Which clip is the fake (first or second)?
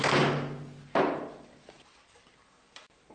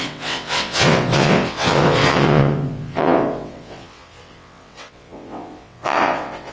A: second